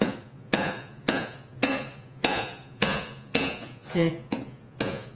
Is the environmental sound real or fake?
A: fake